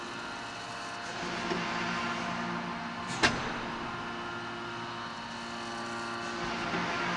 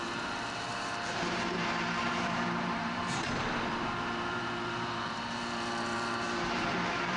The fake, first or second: second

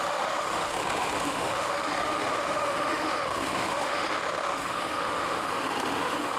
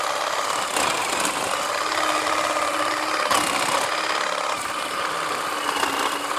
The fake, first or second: first